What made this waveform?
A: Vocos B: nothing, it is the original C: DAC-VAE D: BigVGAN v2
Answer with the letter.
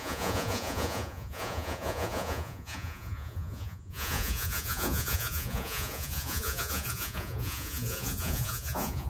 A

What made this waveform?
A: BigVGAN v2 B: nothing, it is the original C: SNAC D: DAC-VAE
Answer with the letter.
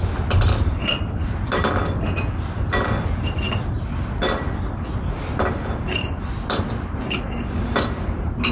B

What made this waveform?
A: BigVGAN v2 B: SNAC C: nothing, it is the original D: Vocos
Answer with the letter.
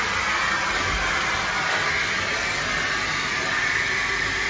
C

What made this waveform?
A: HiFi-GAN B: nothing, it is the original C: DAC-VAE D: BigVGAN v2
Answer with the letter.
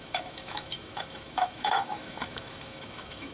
C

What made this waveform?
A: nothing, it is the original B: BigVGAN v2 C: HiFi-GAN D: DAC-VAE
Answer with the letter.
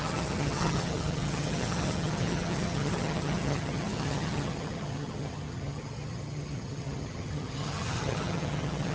C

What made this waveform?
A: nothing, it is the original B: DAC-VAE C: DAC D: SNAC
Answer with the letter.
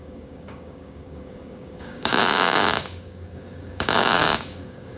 C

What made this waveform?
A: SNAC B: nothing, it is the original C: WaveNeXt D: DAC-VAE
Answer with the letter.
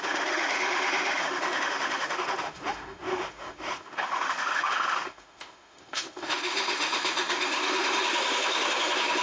D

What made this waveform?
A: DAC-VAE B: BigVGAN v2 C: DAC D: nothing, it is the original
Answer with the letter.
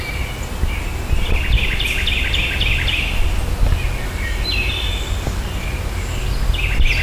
D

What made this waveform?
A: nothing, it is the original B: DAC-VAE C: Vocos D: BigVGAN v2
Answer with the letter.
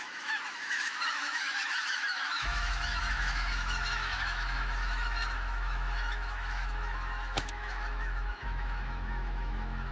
B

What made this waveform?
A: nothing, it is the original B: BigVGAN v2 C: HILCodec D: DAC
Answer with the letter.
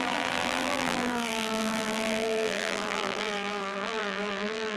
B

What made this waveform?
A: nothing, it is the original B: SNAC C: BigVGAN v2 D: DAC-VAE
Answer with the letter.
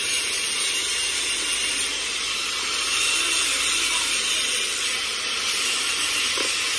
A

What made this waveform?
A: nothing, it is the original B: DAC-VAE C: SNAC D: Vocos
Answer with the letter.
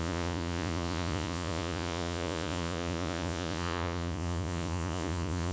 D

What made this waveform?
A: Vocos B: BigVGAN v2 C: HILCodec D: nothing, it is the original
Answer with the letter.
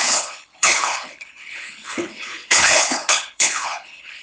C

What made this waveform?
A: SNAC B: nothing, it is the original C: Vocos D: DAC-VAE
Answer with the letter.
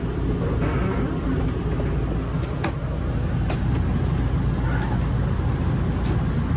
B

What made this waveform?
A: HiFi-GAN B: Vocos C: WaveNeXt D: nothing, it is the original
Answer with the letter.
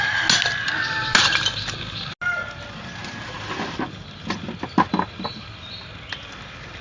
D